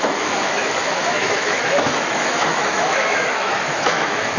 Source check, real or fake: fake